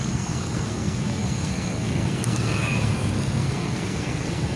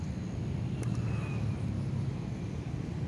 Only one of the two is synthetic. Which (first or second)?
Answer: first